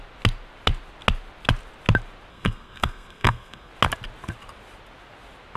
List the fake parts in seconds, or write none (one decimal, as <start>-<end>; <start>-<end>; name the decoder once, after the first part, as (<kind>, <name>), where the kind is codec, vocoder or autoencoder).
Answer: 2.3-3.7 (codec, SNAC)